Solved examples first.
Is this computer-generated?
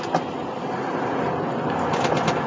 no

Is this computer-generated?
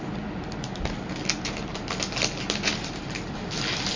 no